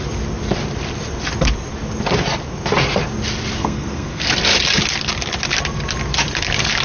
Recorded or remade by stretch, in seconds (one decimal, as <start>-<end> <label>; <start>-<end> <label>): 0.0-3.6 recorded; 3.6-4.3 remade; 4.3-6.8 recorded